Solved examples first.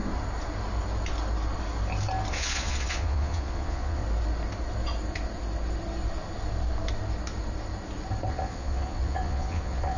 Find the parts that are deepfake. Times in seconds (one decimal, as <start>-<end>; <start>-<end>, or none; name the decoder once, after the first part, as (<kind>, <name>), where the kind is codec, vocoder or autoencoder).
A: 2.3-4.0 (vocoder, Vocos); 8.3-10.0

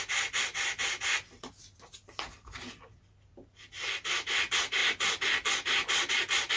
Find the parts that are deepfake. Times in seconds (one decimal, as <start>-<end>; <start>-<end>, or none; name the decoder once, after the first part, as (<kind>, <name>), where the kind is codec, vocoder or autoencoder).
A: none

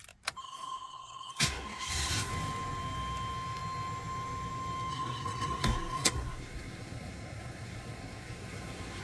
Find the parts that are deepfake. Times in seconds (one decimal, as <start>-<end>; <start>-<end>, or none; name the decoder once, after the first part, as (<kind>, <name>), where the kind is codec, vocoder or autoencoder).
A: 0.4-2.3 (codec, SNAC); 4.9-9.0